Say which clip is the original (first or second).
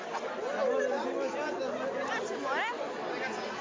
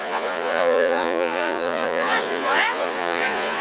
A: first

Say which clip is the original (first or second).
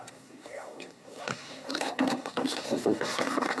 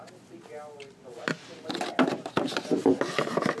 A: second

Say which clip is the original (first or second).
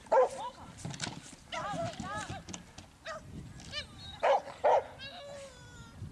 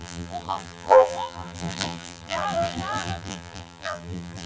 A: first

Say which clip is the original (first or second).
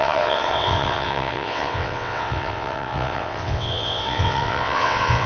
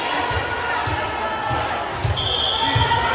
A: second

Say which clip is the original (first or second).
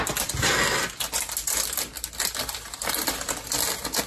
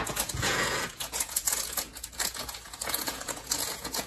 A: first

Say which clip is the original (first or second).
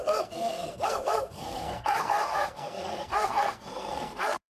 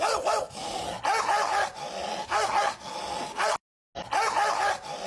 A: second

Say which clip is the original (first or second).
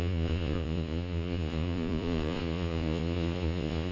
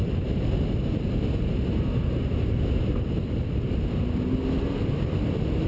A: second